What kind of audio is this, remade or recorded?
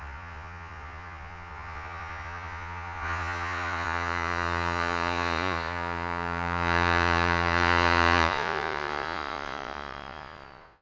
remade